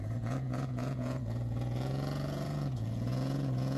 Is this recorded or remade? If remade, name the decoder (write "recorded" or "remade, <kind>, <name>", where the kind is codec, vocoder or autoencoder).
remade, vocoder, Vocos